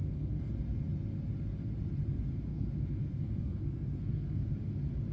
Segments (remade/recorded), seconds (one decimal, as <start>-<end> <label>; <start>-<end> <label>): 0.0-0.5 remade; 0.5-2.5 recorded; 2.5-4.5 remade; 4.5-5.1 recorded